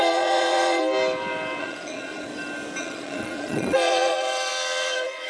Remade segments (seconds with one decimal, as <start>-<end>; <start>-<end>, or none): 0.0-0.8; 1.6-2.3; 2.8-5.3